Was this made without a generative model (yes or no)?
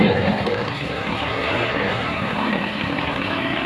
no